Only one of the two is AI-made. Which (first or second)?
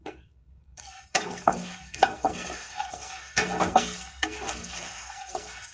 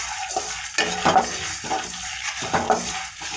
first